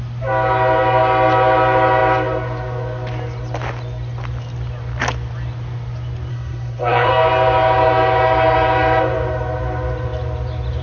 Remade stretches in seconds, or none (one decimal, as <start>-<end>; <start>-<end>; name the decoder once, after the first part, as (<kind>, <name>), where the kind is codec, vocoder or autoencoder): 6.3-7.1 (codec, SNAC)